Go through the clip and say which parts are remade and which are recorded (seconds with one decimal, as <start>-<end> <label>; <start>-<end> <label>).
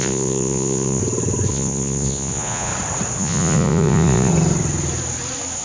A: 0.0-1.0 remade; 1.0-1.5 recorded; 1.5-2.7 remade; 2.7-3.2 recorded; 3.2-4.3 remade; 4.3-5.6 recorded